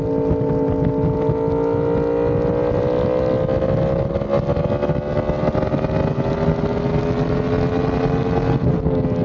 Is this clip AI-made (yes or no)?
no